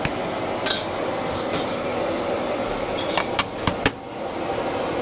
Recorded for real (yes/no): yes